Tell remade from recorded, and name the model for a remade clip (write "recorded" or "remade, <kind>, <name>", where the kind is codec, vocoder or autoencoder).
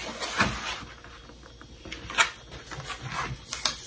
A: recorded